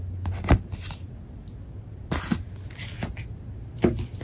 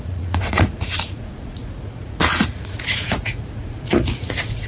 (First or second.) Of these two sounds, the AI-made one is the second